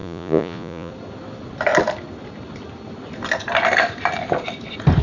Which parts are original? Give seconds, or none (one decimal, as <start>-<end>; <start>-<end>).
0.9-5.0